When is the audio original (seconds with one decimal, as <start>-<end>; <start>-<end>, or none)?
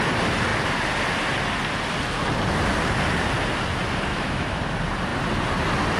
0.0-4.1; 4.6-6.0